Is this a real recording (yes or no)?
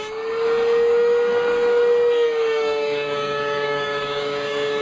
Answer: no